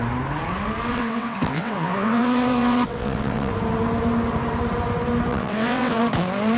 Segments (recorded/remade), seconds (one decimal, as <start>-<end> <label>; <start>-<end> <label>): 0.0-0.9 recorded; 0.9-3.5 remade; 3.5-5.3 recorded; 5.3-6.0 remade; 6.0-6.6 recorded